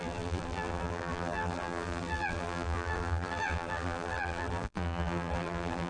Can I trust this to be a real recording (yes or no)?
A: no